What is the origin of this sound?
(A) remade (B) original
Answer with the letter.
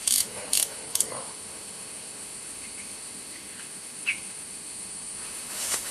A